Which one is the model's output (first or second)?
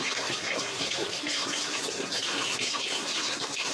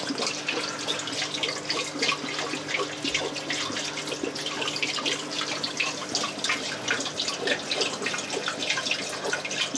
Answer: first